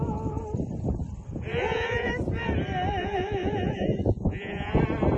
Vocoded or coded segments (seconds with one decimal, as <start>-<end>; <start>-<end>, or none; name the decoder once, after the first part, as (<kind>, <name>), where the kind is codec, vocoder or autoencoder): 1.5-2.1 (vocoder, Vocos); 3.0-4.8